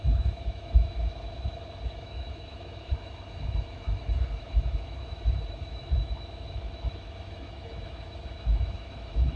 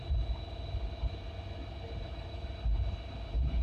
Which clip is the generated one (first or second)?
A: first